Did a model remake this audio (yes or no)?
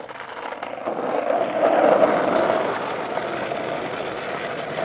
no